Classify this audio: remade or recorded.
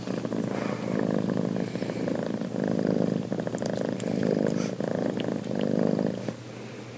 remade